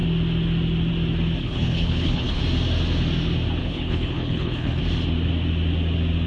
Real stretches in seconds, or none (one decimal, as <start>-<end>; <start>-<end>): 0.0-1.4; 2.4-3.6; 4.8-6.3